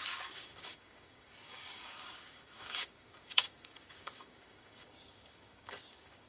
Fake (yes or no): yes